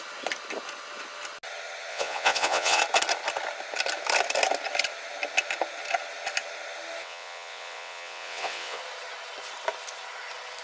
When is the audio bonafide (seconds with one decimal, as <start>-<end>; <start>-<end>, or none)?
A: 0.0-1.9; 2.8-7.0; 8.8-10.6